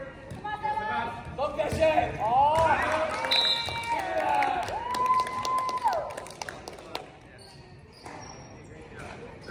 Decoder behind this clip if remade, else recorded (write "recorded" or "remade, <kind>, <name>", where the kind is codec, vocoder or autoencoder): recorded